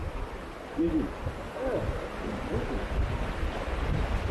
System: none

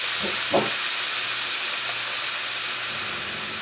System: none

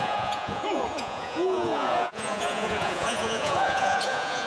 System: vocoder, Vocos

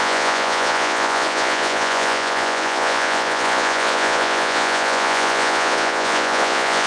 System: vocoder, Vocos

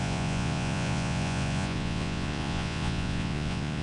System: vocoder, Vocos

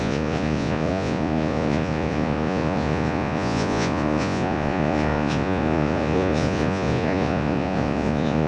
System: vocoder, Vocos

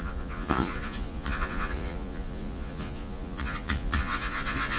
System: vocoder, Vocos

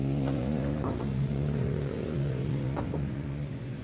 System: vocoder, Vocos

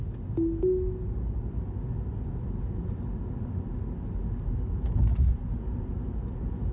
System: none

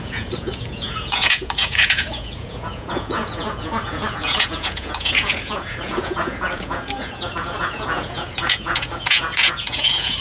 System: vocoder, Vocos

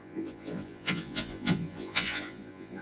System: vocoder, Vocos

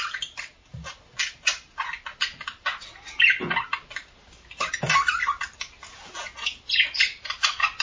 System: none